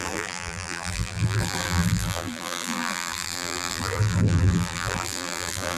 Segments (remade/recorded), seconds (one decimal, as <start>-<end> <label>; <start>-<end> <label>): 0.0-5.8 remade